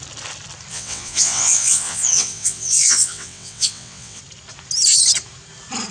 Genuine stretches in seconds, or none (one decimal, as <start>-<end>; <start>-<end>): 0.0-0.7; 4.2-5.9